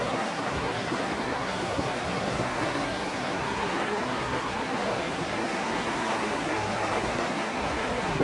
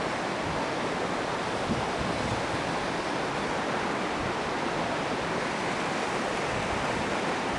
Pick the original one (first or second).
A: second